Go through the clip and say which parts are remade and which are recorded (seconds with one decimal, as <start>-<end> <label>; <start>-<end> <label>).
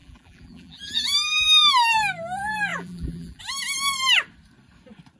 0.0-1.7 remade; 1.7-2.7 recorded; 2.7-3.4 remade; 3.4-5.2 recorded